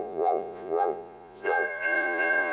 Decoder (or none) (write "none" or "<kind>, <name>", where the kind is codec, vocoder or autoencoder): vocoder, Vocos